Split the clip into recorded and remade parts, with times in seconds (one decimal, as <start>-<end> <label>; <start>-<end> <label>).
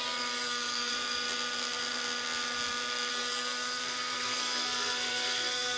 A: 0.0-0.4 recorded; 0.4-0.9 remade; 0.9-3.1 recorded; 3.1-5.8 remade